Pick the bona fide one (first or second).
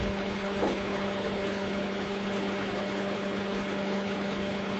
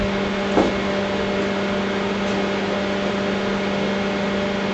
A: second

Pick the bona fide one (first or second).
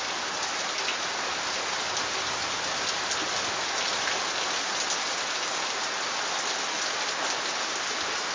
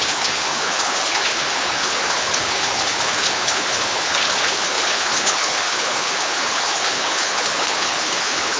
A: first